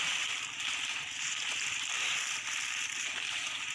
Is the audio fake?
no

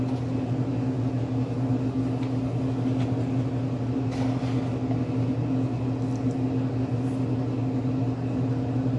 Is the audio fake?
no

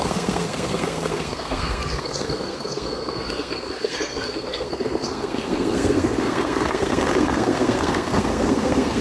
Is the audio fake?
yes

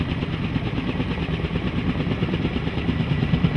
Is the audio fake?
no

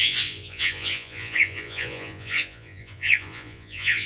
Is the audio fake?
yes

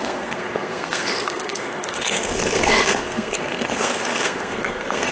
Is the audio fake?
yes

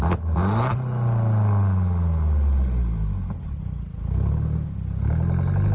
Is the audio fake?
no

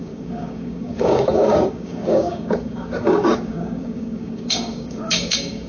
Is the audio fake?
yes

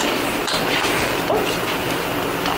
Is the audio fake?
no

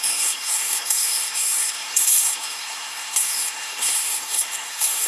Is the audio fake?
yes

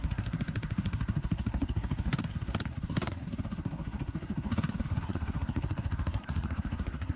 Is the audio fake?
yes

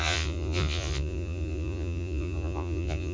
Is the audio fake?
yes